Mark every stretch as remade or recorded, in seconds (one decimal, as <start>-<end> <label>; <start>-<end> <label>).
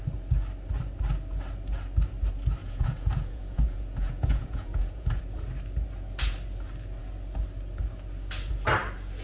0.0-2.6 recorded; 2.6-5.2 remade; 5.2-9.2 recorded